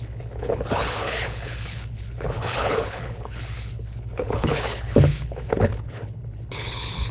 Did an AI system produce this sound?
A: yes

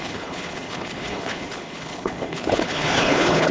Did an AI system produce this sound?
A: yes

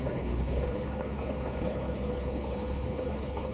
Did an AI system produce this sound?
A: yes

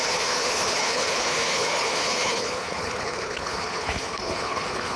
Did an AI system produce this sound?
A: yes